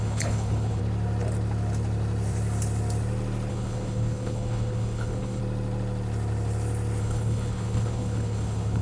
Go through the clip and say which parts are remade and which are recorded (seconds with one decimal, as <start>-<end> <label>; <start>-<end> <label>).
0.0-0.8 remade; 0.8-3.5 recorded; 3.5-5.4 remade; 5.4-7.0 recorded; 7.0-8.8 remade